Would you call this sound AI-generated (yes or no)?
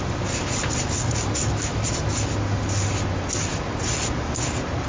no